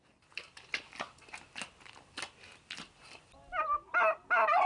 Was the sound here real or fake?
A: real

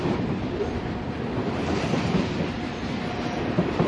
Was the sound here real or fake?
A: fake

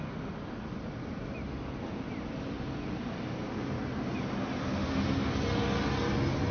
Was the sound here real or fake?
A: real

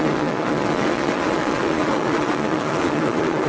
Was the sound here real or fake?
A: fake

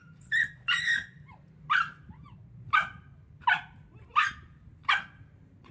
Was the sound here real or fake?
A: fake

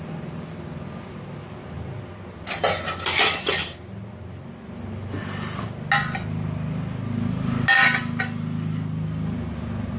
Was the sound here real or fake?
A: real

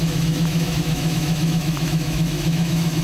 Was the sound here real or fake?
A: fake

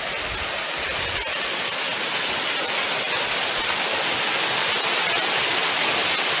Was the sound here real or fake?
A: real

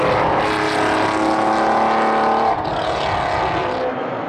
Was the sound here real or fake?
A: real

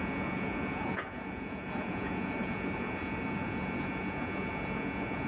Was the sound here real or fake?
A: fake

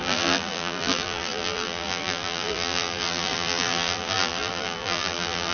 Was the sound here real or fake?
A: fake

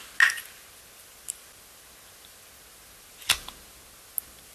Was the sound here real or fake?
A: real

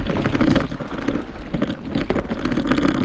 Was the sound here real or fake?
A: real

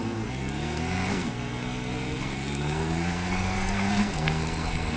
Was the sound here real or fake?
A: fake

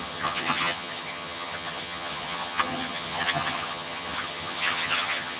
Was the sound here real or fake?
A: fake